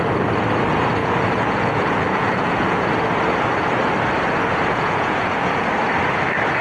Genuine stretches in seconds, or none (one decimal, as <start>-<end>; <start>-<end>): 0.0-1.0; 2.8-4.5; 5.7-6.6